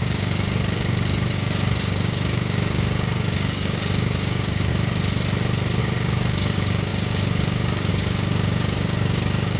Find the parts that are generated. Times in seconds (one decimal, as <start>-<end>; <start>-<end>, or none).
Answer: 0.0-4.7; 5.8-9.6